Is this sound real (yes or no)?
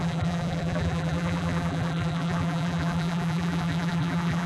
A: no